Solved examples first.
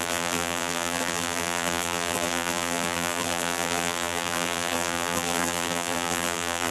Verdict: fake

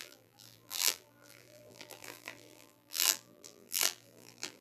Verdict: fake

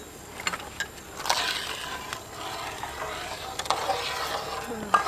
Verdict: real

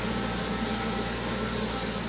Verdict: real